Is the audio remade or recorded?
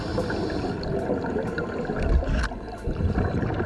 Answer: recorded